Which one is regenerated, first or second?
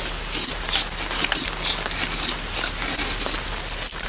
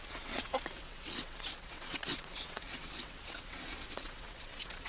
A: second